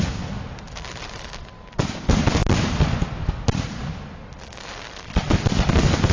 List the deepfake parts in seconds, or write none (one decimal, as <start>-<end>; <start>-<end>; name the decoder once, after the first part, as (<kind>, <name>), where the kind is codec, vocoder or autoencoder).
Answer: none